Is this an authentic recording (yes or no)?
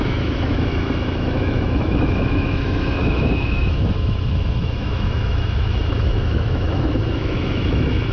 no